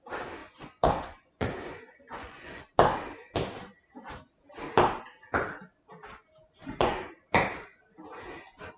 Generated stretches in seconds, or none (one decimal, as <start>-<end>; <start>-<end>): 0.4-2.6; 6.6-7.1